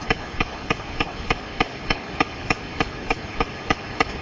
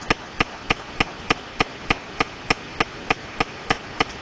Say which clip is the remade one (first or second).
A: first